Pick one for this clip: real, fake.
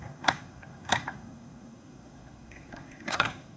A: fake